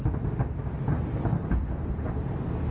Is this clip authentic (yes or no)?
yes